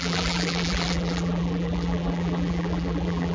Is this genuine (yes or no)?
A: no